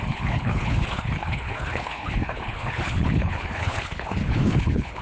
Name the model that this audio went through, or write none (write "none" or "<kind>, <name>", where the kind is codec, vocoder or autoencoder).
codec, HILCodec